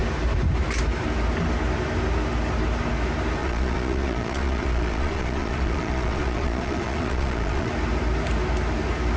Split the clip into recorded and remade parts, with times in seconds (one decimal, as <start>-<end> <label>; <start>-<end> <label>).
0.0-3.4 recorded; 3.4-7.7 remade; 7.7-9.2 recorded